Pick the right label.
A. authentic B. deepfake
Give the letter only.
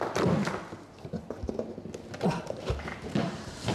A